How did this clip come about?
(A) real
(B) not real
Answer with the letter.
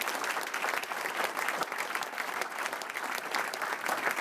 A